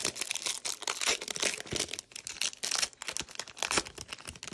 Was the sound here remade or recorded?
recorded